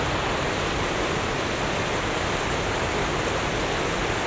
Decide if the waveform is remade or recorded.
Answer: recorded